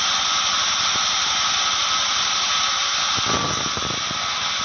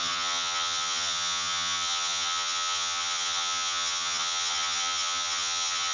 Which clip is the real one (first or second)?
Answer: first